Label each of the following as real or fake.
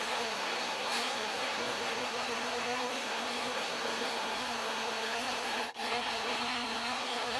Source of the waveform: fake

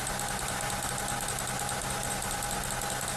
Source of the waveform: real